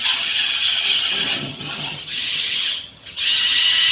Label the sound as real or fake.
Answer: fake